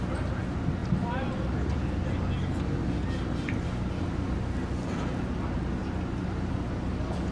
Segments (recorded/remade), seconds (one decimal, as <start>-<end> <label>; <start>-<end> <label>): 0.0-7.3 recorded